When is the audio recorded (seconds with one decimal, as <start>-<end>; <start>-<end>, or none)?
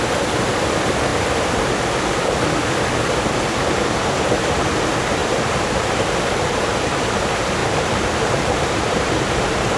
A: 0.0-5.2; 6.8-7.6; 9.1-9.8